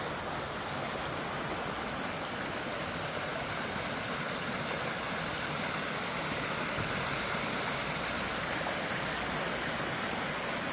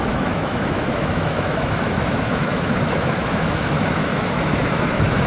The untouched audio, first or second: first